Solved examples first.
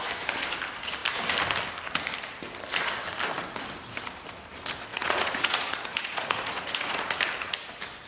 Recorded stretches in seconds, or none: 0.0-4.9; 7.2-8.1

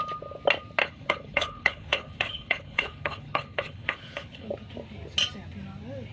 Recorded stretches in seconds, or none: 0.0-0.8; 4.5-6.1

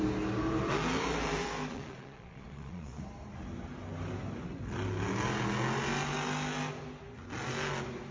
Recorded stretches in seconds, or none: 0.0-1.7; 3.0-8.1